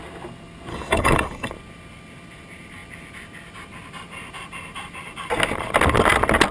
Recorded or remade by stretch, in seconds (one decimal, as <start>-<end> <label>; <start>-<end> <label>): 0.0-0.7 recorded; 0.7-1.5 remade; 1.5-6.5 recorded